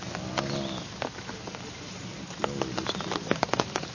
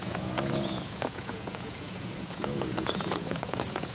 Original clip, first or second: first